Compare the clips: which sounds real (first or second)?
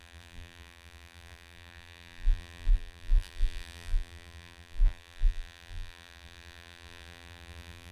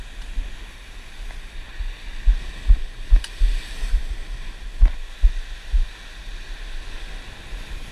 second